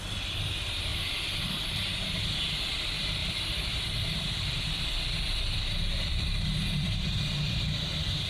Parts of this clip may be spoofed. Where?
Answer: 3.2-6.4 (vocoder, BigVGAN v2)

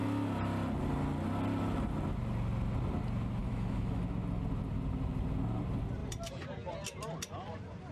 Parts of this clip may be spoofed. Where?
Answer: 3.4-4.0 (autoencoder, DAC-VAE)